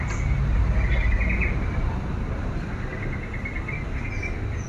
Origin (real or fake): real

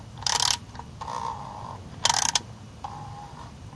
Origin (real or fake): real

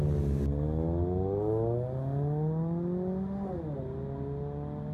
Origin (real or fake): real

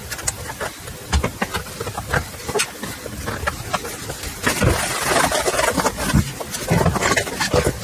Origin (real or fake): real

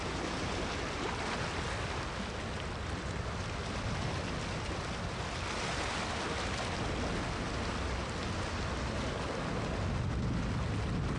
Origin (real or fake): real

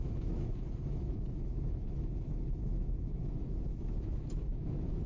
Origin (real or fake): fake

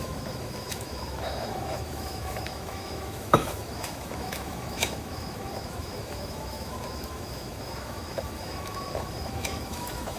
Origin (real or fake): fake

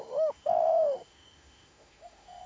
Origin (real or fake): fake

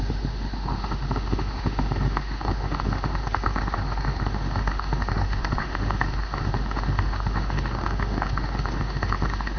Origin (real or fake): fake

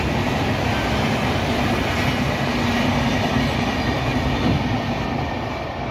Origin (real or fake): real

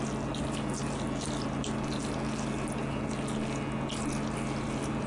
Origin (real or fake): real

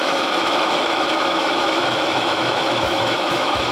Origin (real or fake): fake